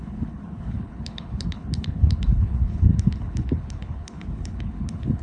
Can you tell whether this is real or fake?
fake